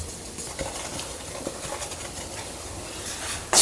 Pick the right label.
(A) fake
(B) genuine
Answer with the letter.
B